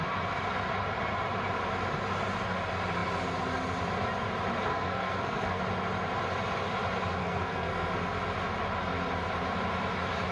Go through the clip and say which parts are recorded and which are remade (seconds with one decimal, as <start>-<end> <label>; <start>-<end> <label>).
0.0-4.7 recorded; 4.7-5.6 remade; 5.6-7.2 recorded; 7.2-7.9 remade; 7.9-10.3 recorded